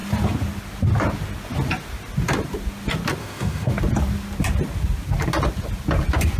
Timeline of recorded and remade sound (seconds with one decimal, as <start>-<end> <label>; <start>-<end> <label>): 0.0-3.2 recorded; 3.2-3.7 remade; 3.7-6.4 recorded